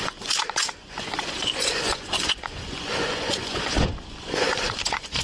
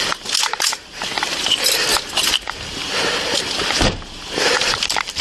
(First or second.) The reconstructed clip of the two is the first